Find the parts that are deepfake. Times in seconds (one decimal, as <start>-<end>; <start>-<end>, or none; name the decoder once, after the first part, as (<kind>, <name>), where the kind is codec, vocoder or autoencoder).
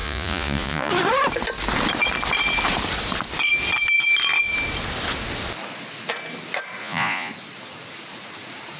0.0-0.9 (vocoder, Vocos); 6.8-7.3